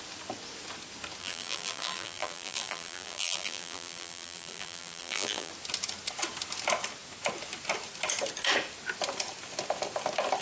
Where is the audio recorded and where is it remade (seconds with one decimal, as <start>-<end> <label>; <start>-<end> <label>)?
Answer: 0.0-1.2 recorded; 1.2-5.5 remade; 5.5-10.4 recorded